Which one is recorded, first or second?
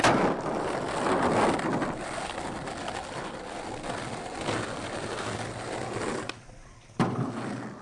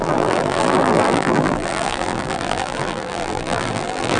first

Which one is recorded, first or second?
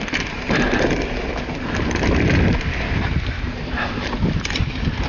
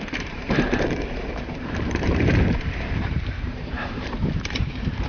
first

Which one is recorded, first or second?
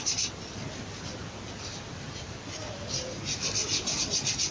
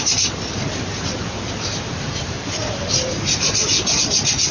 first